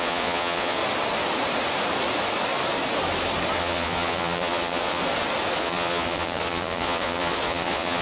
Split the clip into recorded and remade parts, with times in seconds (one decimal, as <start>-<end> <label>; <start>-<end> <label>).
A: 0.0-0.8 remade; 0.8-3.6 recorded; 3.6-5.0 remade; 5.0-5.6 recorded; 5.6-8.0 remade